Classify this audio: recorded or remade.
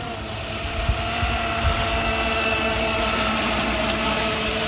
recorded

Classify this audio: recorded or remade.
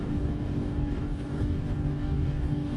remade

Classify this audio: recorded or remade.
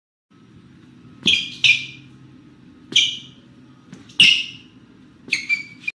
recorded